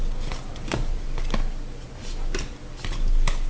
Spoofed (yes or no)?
no